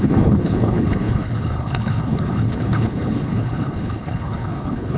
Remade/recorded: remade